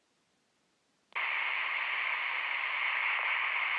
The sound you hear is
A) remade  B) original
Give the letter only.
B